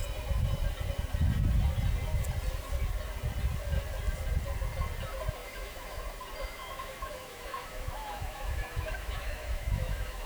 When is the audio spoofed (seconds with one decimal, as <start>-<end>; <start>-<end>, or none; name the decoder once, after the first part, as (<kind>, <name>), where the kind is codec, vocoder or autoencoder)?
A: 5.4-6.0 (autoencoder, DAC-VAE); 6.4-10.3